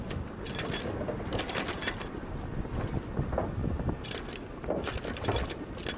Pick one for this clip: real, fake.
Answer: real